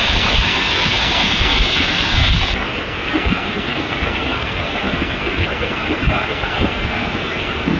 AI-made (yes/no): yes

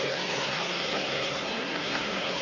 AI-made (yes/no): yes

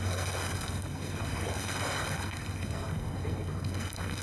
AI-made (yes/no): yes